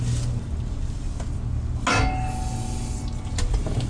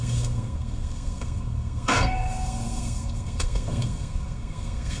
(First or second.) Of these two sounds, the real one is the first